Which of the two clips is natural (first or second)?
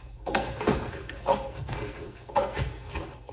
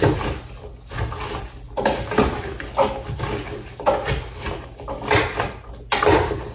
second